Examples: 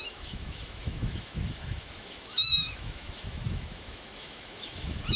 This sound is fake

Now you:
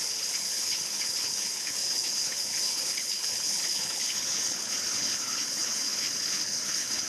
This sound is fake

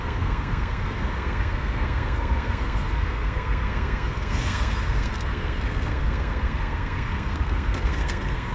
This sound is fake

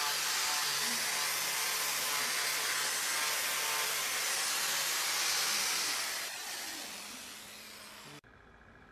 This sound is real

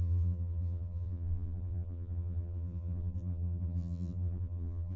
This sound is fake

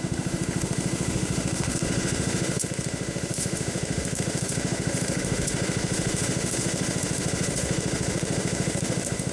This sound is fake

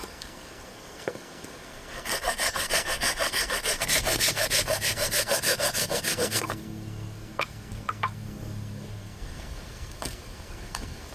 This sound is fake